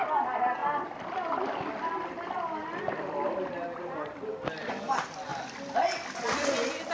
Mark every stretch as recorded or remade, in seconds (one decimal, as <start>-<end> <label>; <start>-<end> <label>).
0.0-6.9 recorded